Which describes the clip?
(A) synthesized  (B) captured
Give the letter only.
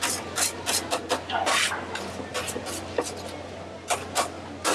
B